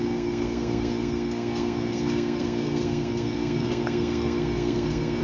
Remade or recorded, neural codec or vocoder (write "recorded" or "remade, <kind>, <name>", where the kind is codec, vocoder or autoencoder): remade, codec, SNAC